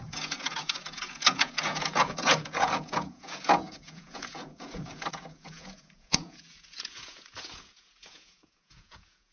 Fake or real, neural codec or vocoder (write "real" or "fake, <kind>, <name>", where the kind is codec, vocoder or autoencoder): fake, vocoder, Vocos